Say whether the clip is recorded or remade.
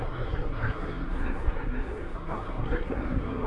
remade